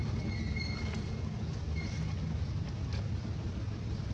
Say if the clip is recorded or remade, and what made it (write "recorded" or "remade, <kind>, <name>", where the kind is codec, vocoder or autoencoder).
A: recorded